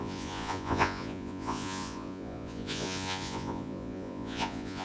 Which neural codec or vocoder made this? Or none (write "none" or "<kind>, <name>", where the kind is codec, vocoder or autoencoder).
vocoder, Vocos